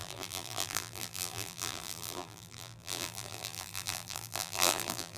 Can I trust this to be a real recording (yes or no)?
no